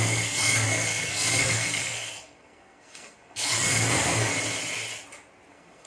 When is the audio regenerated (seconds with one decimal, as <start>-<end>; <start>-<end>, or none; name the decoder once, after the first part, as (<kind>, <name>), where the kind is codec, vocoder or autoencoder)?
0.0-4.3 (codec, SNAC); 5.5-5.9